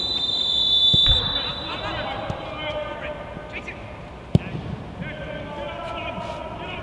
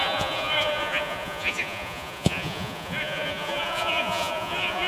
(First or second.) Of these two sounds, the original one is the first